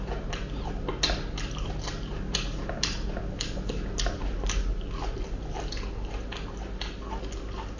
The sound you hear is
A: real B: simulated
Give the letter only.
A